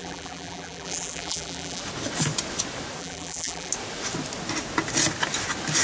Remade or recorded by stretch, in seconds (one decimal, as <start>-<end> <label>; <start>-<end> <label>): 0.0-1.8 remade; 1.8-3.0 recorded; 3.0-3.7 remade; 3.7-5.8 recorded